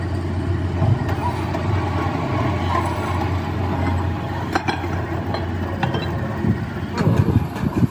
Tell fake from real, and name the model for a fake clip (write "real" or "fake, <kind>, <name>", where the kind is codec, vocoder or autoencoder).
real